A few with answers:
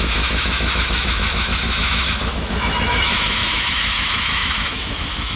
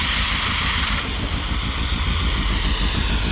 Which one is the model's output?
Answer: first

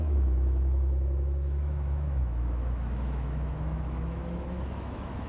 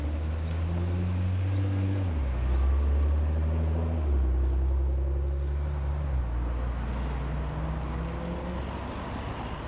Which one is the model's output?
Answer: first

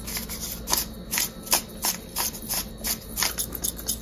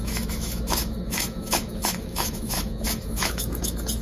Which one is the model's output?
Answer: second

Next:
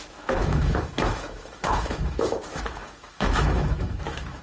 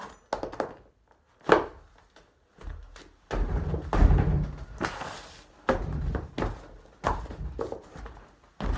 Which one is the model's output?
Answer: first